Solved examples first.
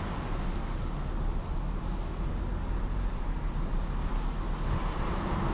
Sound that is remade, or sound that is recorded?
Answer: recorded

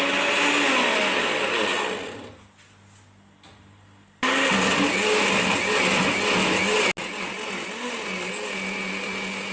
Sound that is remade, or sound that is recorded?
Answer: recorded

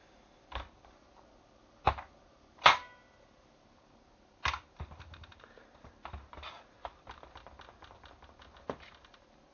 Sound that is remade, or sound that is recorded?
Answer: recorded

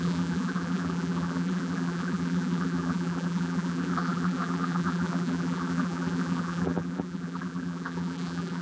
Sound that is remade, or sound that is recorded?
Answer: remade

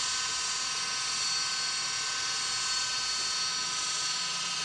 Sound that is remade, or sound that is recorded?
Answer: recorded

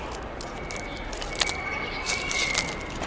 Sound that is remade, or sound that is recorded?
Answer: recorded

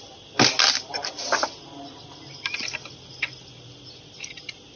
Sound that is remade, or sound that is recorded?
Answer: recorded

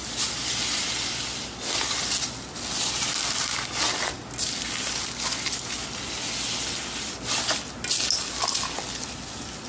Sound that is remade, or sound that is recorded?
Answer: recorded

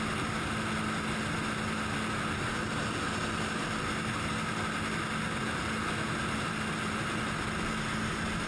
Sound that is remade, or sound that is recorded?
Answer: recorded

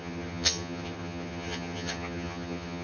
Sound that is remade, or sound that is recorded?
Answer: remade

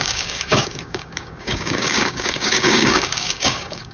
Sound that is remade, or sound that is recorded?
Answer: remade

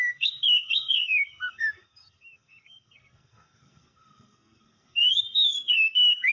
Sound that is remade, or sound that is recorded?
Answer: remade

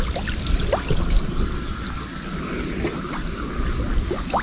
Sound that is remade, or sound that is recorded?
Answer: recorded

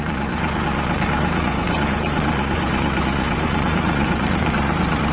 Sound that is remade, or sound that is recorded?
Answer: remade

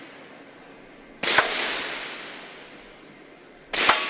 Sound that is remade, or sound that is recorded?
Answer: recorded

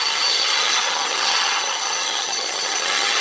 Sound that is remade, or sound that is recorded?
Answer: remade